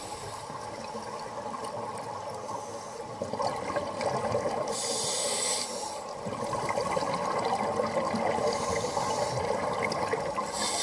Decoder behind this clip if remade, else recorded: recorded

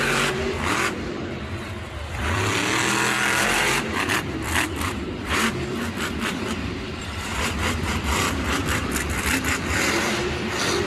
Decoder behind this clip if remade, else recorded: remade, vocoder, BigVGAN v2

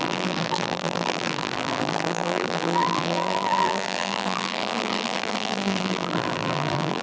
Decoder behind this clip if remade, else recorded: remade, vocoder, BigVGAN v2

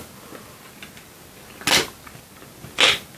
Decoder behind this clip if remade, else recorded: recorded